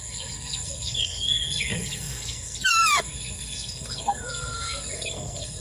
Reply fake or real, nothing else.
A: fake